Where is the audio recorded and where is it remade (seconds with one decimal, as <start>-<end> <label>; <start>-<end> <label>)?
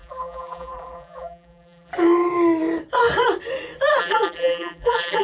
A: 0.0-1.9 remade; 1.9-4.0 recorded; 4.0-5.2 remade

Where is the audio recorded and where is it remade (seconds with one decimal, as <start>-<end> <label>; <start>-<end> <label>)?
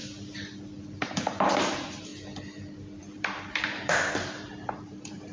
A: 0.0-0.8 recorded; 0.8-2.1 remade; 2.1-3.0 recorded; 3.0-5.3 remade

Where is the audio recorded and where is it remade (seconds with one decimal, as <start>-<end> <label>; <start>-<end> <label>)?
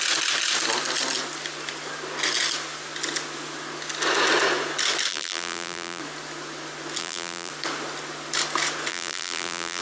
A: 0.0-5.1 recorded; 5.1-6.0 remade; 6.0-7.0 recorded; 7.0-7.5 remade; 7.5-8.9 recorded; 8.9-9.8 remade